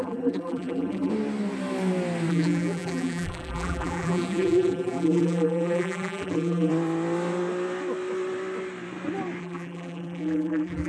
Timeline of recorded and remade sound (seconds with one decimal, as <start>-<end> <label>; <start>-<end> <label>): 0.0-1.1 remade; 1.1-2.3 recorded; 2.3-6.7 remade; 6.7-9.4 recorded; 9.4-10.9 remade